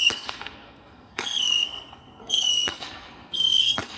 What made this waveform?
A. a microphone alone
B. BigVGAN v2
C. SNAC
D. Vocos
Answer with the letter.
C